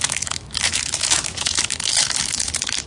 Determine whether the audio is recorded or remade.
remade